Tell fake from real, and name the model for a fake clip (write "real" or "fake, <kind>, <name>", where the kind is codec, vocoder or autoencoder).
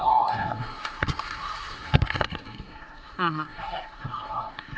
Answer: fake, codec, SNAC